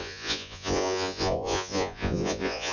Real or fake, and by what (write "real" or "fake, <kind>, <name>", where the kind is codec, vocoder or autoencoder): fake, vocoder, Vocos